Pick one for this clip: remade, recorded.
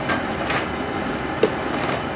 recorded